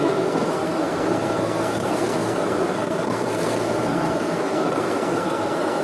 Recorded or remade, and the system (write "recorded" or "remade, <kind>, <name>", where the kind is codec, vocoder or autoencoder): remade, codec, SNAC